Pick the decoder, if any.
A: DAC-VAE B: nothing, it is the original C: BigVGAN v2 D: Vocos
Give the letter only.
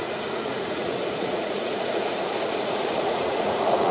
D